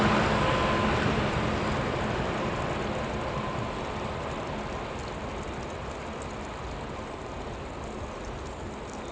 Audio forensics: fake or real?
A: real